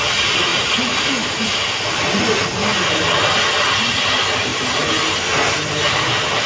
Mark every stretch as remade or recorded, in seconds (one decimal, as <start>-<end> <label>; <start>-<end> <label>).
0.0-0.5 remade; 0.5-1.1 recorded; 1.1-4.5 remade; 4.5-6.0 recorded; 6.0-6.5 remade